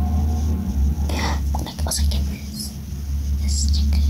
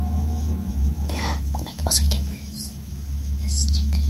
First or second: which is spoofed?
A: second